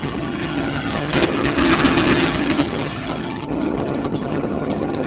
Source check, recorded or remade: remade